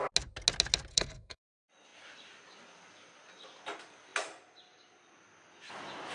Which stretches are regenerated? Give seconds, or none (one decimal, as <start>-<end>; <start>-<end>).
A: 0.9-1.4